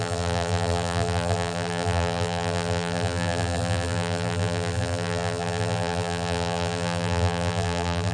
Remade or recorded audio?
remade